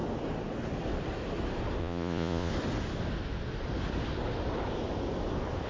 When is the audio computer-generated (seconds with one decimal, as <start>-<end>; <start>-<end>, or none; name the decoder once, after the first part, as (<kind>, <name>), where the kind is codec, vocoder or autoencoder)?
1.8-2.5 (vocoder, Vocos)